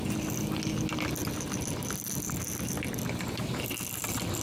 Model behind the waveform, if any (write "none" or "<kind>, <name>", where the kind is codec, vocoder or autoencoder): none